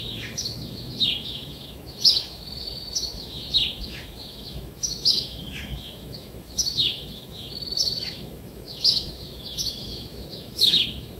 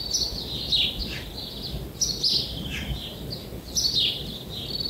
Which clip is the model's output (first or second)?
first